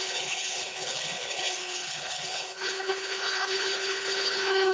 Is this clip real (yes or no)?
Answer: no